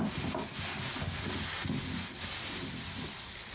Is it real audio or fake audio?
real